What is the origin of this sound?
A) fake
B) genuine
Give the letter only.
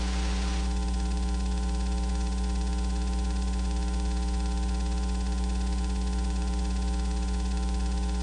A